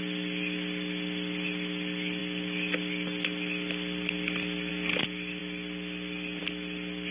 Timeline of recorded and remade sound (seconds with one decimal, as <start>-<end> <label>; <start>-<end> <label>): 0.0-7.1 recorded